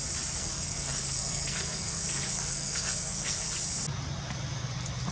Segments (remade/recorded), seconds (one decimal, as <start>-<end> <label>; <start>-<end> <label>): 0.0-0.4 recorded; 0.4-3.5 remade; 3.5-5.1 recorded